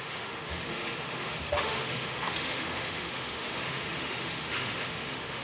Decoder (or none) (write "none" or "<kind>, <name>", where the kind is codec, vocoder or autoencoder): autoencoder, DAC-VAE